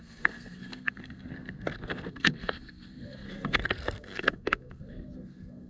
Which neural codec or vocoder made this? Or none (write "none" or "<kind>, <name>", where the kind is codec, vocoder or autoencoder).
codec, SNAC